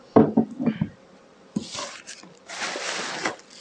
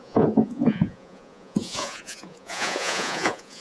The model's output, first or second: second